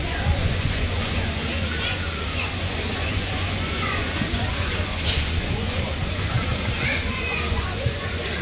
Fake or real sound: fake